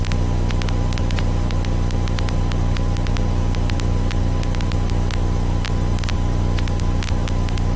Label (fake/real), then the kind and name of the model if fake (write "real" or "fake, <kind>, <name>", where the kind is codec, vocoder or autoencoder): real